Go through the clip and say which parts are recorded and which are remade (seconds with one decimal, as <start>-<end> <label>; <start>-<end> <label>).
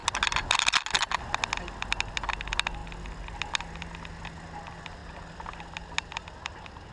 0.0-6.9 recorded